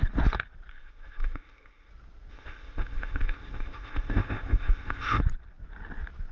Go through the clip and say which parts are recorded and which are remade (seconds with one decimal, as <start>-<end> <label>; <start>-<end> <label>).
0.0-0.7 recorded; 0.7-1.9 remade; 1.9-2.3 recorded; 2.3-5.2 remade; 5.2-6.3 recorded